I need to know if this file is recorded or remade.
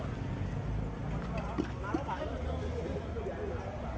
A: recorded